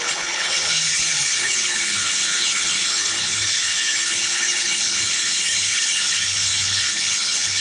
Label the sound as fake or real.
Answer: fake